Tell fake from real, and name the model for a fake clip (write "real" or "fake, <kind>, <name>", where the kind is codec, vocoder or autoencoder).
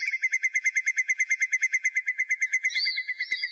fake, vocoder, BigVGAN v2